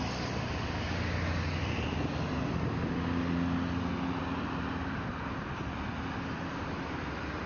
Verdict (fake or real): real